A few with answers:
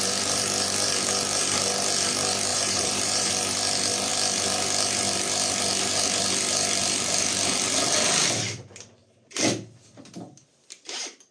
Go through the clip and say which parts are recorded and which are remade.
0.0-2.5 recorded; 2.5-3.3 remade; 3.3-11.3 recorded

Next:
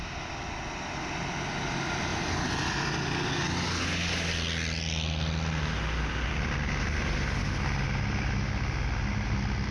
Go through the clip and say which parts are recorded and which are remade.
0.0-9.7 recorded

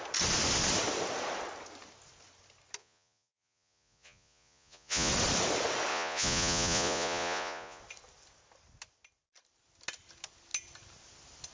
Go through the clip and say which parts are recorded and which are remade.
0.0-2.8 recorded; 2.8-5.1 remade; 5.1-5.9 recorded; 5.9-7.8 remade; 7.8-11.5 recorded

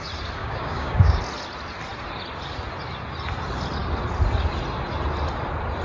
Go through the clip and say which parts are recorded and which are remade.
0.0-0.4 recorded; 0.4-1.2 remade; 1.2-5.8 recorded

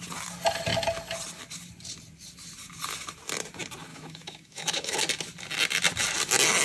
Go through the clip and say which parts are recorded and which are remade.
0.0-3.9 recorded; 3.9-5.0 remade; 5.0-6.6 recorded

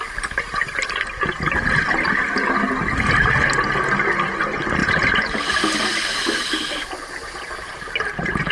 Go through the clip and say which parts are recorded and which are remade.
0.0-4.8 recorded; 4.8-5.5 remade; 5.5-8.5 recorded

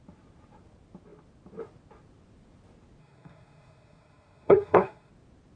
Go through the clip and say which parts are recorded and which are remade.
0.0-3.0 recorded; 3.0-5.1 remade; 5.1-5.6 recorded